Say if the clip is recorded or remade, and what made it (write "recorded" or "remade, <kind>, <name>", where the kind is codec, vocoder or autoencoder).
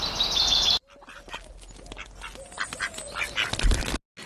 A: recorded